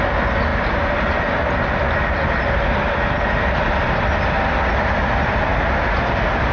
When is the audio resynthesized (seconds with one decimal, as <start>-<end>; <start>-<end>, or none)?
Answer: 0.5-4.0